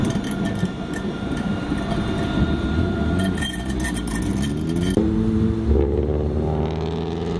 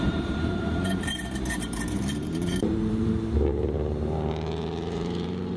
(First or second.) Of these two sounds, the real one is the first